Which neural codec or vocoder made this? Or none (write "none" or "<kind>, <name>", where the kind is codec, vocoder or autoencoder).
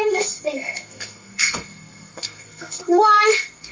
codec, SNAC